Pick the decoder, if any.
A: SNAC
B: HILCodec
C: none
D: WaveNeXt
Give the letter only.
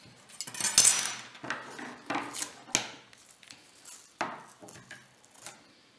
C